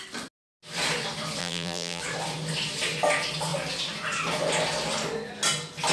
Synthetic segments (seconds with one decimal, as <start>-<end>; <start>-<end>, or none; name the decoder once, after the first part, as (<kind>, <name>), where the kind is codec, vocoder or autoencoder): 1.4-2.0 (vocoder, BigVGAN v2)